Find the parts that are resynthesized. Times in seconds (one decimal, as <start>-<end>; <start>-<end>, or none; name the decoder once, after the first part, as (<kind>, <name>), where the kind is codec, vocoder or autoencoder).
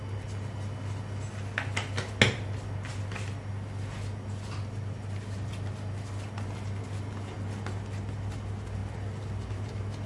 none